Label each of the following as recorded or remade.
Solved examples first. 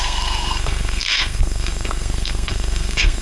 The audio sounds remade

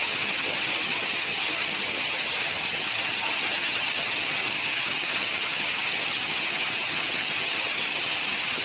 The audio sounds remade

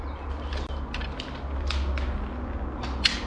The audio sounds recorded